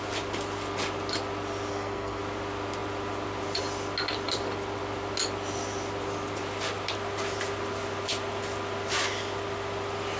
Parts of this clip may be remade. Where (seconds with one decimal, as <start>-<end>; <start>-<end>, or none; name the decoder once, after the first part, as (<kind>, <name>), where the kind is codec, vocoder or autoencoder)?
1.7-2.2 (codec, SNAC)